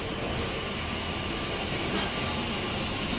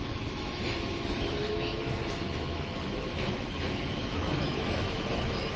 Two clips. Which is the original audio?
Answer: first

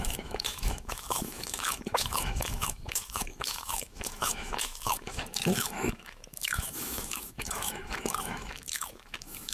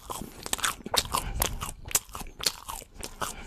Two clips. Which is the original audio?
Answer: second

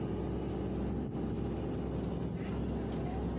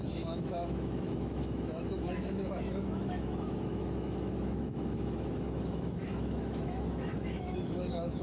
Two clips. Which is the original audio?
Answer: first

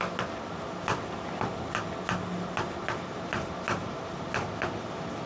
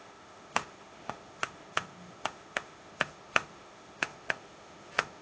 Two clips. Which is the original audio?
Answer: first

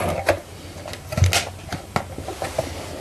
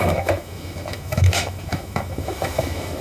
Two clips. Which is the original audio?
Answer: first